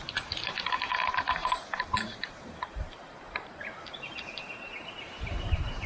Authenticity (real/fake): fake